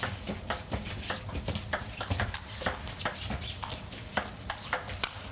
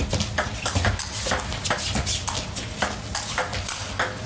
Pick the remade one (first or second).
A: first